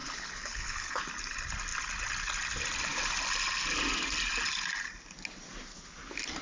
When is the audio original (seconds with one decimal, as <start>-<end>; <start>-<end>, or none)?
1.0-6.4